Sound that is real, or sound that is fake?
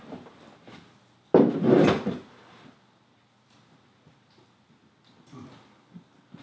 real